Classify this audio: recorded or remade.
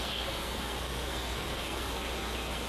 remade